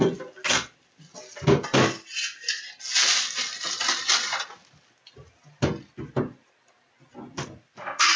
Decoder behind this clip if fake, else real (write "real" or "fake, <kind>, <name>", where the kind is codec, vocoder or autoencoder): real